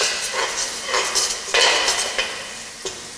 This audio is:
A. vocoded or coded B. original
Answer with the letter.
B